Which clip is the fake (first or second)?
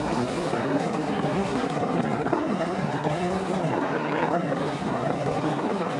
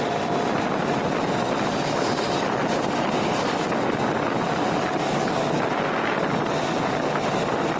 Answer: first